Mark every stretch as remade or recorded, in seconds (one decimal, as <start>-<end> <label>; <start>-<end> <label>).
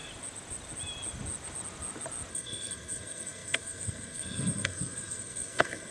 0.0-2.3 recorded; 2.3-5.9 remade